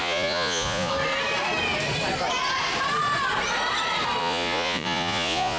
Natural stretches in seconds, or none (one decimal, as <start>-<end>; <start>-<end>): 0.9-4.2